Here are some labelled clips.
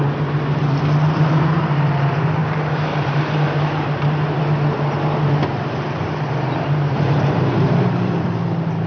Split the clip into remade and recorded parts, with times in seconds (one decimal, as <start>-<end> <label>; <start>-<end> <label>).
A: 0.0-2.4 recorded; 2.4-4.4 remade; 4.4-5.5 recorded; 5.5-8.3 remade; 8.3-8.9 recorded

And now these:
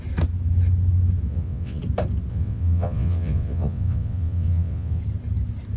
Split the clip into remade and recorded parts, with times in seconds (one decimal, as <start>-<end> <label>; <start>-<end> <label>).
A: 0.0-1.3 recorded; 1.3-1.8 remade; 1.8-2.3 recorded; 2.3-5.0 remade; 5.0-5.8 recorded

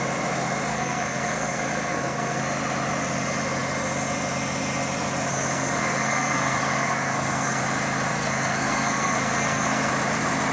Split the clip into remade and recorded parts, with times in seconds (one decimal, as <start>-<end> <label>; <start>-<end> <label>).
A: 0.0-0.7 recorded; 0.7-2.4 remade; 2.4-5.3 recorded; 5.3-7.6 remade; 7.6-8.1 recorded; 8.1-9.9 remade; 9.9-10.5 recorded

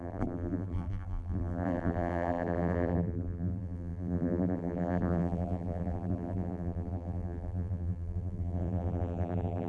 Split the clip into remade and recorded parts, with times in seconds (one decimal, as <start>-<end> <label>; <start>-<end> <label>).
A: 0.0-9.7 remade

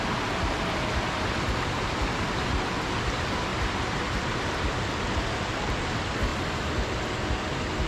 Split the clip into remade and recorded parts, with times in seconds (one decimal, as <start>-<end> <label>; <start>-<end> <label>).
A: 0.0-3.5 recorded; 3.5-4.6 remade; 4.6-7.9 recorded